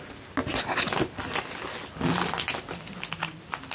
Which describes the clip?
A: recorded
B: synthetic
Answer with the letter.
A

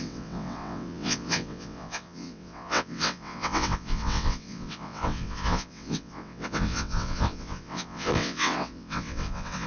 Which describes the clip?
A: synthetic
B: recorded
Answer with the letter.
A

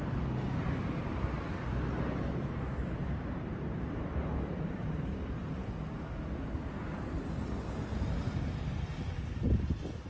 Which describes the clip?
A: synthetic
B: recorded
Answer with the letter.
B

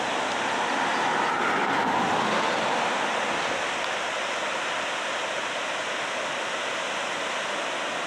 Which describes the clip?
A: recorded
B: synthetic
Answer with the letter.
A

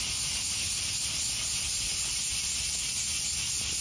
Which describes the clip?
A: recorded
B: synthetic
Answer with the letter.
A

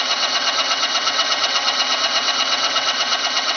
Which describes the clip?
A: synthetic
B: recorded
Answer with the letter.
A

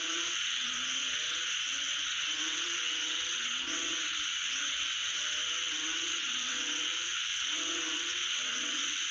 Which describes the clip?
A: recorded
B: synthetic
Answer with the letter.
B